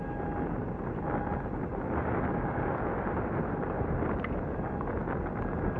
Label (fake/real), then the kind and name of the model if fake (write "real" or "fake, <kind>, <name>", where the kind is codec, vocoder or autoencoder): real